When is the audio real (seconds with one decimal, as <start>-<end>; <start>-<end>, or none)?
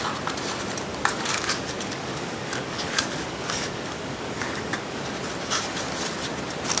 0.0-0.9; 5.0-6.8